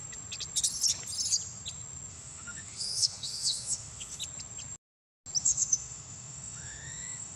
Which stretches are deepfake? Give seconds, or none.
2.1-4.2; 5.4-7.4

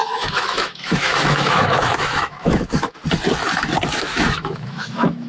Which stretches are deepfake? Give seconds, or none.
0.0-3.0; 3.9-5.3